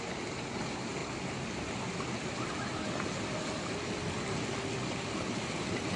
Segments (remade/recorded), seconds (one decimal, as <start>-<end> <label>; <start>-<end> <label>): 0.0-6.0 recorded